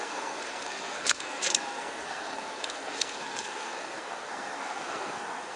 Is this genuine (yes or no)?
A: no